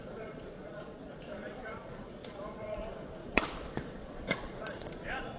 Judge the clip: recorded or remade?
remade